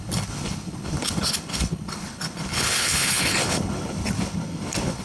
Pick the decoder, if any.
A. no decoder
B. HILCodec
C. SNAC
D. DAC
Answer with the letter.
B